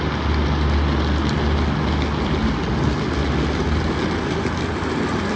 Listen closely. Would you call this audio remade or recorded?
recorded